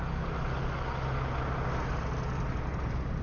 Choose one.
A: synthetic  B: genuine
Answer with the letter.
B